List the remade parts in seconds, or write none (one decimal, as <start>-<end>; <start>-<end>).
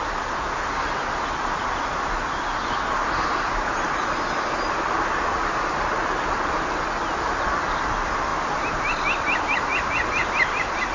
none